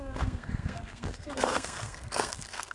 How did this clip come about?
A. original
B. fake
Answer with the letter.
B